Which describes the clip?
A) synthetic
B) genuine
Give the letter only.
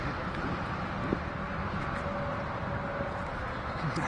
B